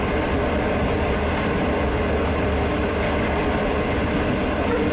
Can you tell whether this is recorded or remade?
recorded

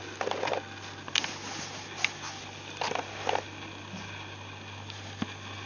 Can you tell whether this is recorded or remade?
recorded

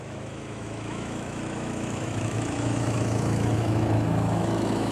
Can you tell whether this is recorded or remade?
remade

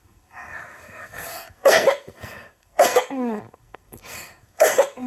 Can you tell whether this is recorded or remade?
remade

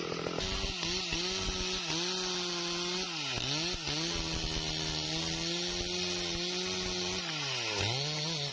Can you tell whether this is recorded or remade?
recorded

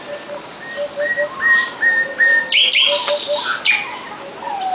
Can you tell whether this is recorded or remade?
recorded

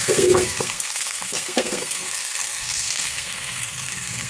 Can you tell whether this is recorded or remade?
remade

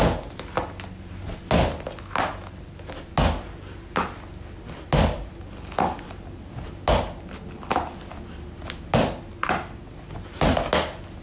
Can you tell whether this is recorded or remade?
recorded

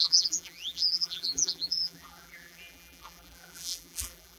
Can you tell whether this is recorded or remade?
remade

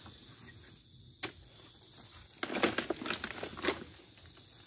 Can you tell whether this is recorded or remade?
recorded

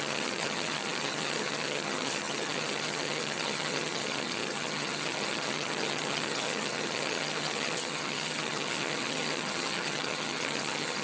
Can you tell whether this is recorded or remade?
remade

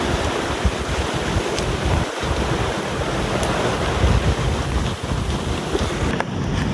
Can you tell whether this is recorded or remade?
recorded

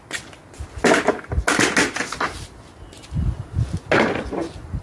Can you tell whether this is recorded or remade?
recorded